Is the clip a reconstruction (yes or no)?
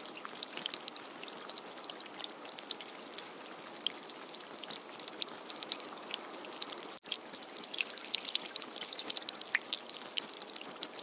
no